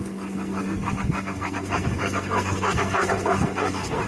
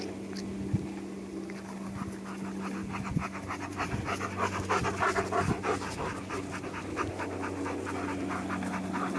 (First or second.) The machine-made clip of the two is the first